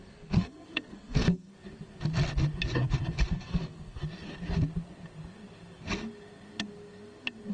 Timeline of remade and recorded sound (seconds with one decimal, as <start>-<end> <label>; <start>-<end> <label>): 0.0-1.5 remade; 1.5-3.3 recorded; 3.3-4.0 remade; 4.0-7.5 recorded